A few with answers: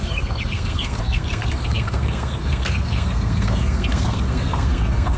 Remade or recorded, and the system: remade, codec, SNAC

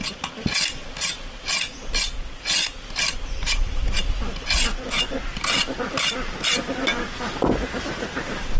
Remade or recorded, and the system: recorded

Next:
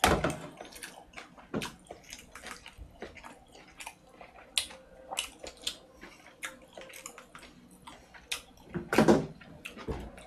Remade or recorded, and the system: recorded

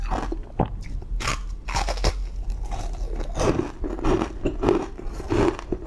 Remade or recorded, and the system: recorded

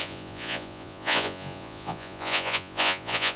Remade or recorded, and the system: remade, vocoder, Vocos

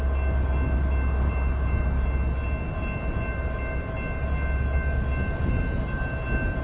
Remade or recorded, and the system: recorded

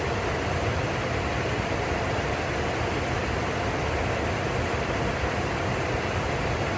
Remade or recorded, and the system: recorded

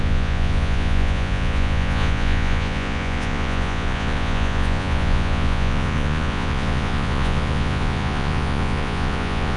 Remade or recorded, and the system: remade, vocoder, Vocos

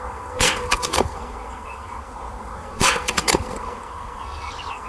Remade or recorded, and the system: remade, codec, SNAC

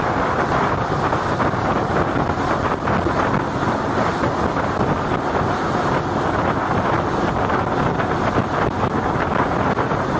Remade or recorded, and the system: recorded